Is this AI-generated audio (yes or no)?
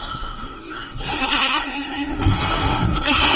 yes